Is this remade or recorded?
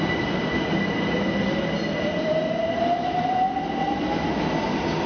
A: recorded